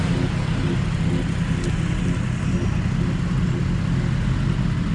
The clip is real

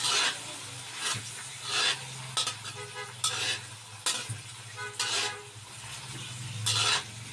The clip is real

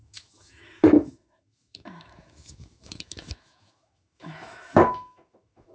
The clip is fake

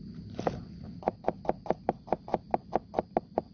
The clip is real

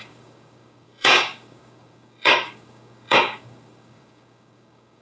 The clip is fake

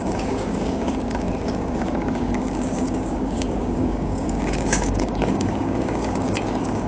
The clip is fake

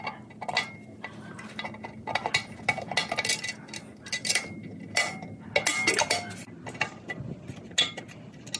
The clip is real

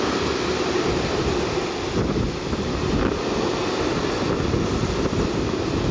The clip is real